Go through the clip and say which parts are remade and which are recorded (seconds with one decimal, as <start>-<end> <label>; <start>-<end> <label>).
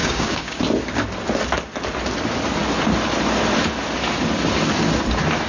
0.0-0.6 remade; 0.6-5.5 recorded